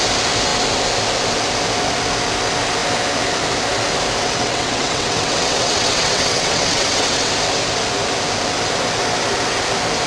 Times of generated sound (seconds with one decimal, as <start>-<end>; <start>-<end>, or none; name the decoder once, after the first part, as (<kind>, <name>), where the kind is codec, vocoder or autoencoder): 4.2-7.3 (vocoder, WaveNeXt)